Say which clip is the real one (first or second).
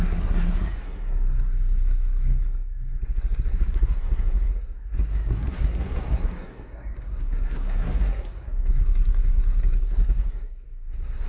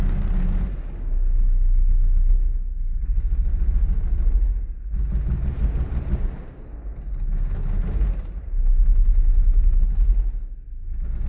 second